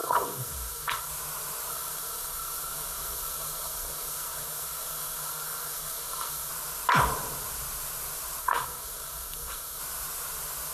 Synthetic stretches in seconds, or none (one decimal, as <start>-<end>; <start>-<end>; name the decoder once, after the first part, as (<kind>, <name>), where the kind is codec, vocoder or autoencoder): 0.0-1.1 (codec, SNAC); 1.7-6.5; 8.4-9.8